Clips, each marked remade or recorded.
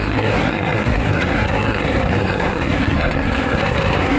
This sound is remade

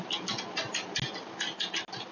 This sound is recorded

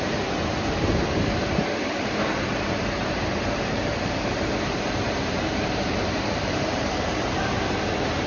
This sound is remade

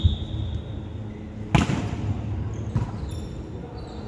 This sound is recorded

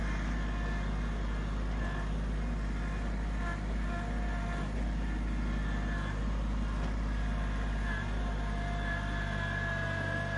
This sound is recorded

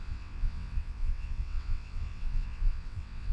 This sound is remade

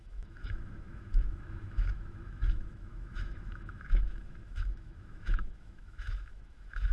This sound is remade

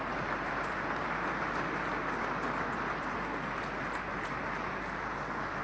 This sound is recorded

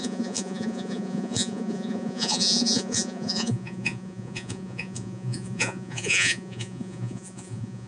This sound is remade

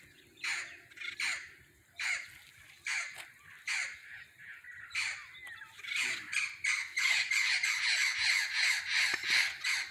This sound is recorded